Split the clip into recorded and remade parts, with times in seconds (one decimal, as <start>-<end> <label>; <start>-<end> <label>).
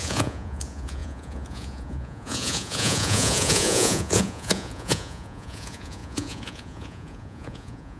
0.0-8.0 remade